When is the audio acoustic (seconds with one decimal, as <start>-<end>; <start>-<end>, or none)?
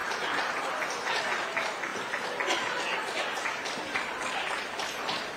0.0-1.9